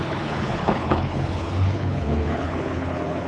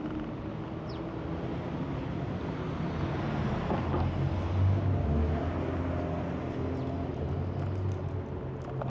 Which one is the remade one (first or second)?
first